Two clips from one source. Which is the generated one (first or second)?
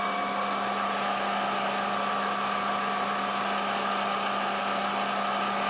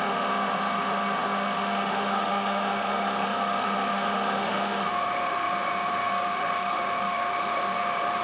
second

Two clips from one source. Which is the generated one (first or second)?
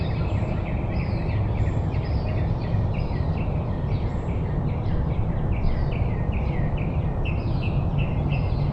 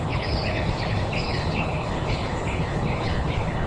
second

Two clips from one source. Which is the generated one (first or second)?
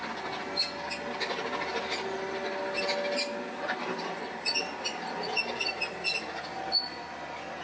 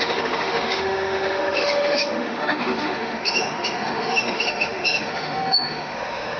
second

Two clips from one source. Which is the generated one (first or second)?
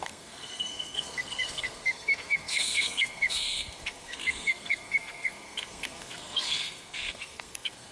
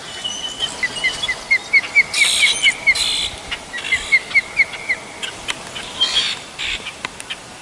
first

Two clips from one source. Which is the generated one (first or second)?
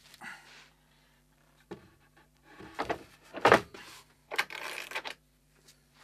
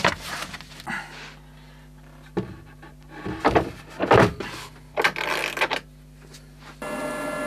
first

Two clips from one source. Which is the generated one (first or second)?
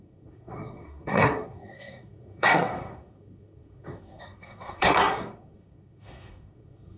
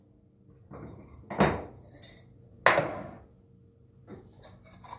first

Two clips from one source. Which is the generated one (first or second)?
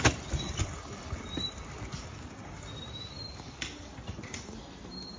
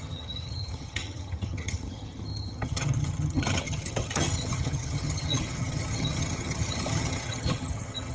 second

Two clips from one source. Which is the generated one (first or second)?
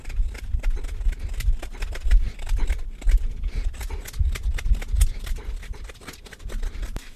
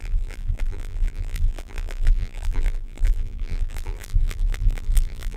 second